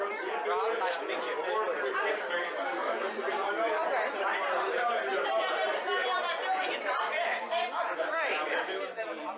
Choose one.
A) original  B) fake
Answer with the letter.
B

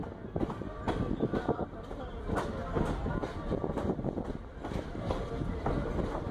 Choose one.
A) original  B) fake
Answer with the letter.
B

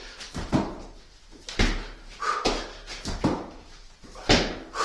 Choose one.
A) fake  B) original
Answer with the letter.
B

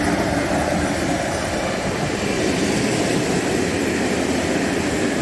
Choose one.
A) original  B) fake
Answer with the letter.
A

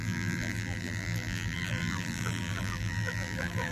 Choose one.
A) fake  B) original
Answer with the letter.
A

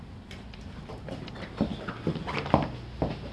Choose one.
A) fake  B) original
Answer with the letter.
B